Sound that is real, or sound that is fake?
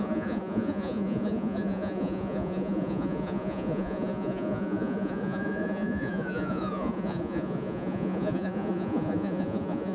fake